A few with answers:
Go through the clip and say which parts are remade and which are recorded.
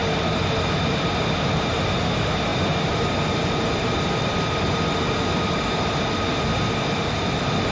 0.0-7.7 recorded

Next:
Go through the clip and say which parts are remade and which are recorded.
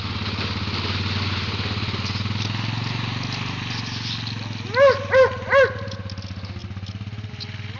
0.0-7.8 recorded